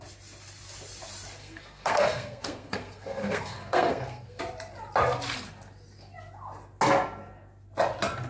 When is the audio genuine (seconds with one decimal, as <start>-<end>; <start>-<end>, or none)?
0.0-1.4; 4.4-8.3